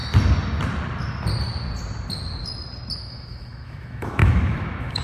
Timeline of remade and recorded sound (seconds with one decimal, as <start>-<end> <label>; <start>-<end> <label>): 0.0-3.0 recorded; 3.0-5.0 remade